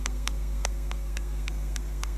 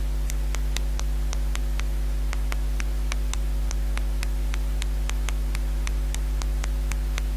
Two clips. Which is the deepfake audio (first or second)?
first